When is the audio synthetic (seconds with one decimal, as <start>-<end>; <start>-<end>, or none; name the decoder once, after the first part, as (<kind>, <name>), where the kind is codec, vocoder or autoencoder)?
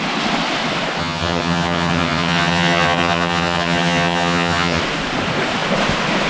1.0-4.8 (vocoder, HiFi-GAN)